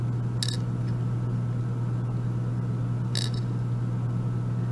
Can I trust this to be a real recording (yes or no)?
yes